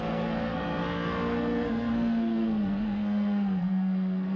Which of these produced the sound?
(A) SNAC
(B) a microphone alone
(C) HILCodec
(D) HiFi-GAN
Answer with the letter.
A